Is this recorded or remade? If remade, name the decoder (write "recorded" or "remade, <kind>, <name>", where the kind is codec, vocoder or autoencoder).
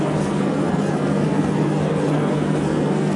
remade, codec, SNAC